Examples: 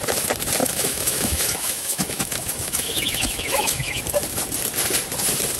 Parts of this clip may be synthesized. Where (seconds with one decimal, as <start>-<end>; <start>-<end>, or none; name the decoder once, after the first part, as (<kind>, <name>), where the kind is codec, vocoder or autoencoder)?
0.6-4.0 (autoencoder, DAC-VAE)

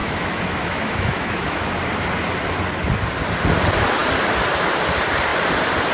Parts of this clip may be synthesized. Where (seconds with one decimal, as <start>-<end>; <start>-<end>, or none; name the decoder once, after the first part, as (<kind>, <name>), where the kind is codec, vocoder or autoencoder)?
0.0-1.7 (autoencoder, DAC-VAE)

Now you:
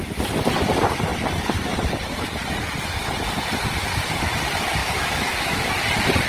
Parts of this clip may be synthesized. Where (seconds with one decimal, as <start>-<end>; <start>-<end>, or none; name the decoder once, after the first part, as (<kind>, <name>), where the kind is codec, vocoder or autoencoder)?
4.8-5.7 (autoencoder, DAC-VAE)